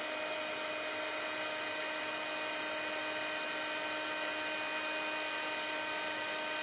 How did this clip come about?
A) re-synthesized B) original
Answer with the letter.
B